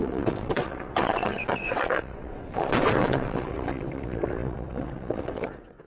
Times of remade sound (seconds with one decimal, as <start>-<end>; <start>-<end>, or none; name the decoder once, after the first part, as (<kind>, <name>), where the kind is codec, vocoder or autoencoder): 0.0-5.9 (vocoder, WaveNeXt)